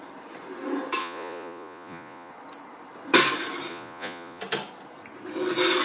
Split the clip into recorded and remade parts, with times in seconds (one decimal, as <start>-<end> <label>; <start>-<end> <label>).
0.0-1.0 recorded; 1.0-2.3 remade; 2.3-3.7 recorded; 3.7-4.4 remade; 4.4-5.8 recorded